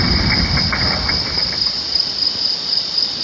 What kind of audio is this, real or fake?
fake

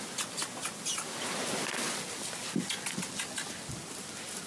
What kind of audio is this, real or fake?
real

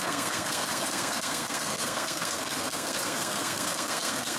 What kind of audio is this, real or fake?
fake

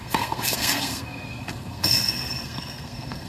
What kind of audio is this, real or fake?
fake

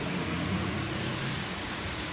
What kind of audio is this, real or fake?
fake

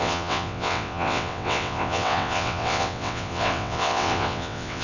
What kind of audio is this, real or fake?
fake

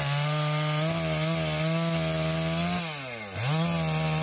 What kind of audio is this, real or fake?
real